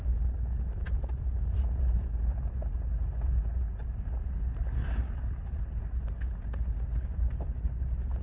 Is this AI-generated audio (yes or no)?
no